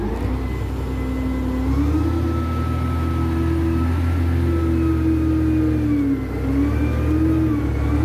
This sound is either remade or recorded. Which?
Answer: recorded